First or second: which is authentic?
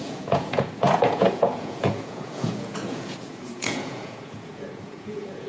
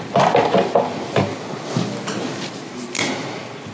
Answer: second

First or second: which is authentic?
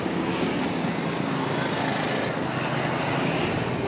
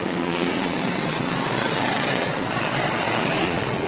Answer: first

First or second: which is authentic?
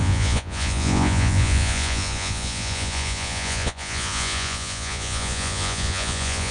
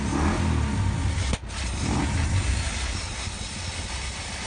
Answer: second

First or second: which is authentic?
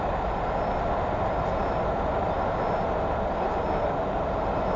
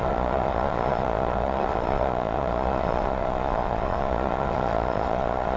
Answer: first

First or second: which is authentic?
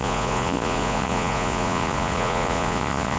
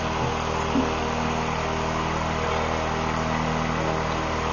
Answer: second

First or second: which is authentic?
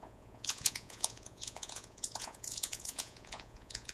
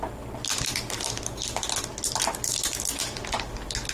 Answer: second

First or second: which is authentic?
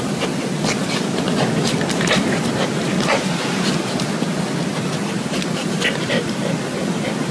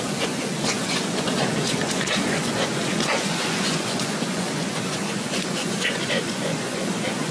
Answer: first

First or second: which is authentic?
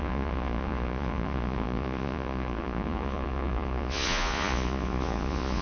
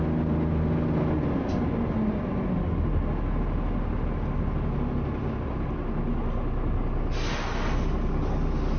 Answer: second